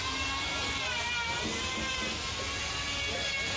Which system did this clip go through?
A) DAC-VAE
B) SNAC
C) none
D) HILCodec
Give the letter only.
C